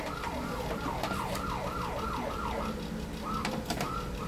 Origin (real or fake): real